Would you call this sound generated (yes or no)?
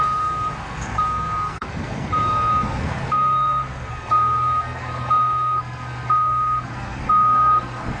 yes